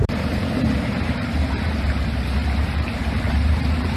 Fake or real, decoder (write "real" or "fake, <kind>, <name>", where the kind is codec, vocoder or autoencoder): fake, vocoder, BigVGAN v2